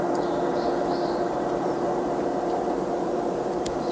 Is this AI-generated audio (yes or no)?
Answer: no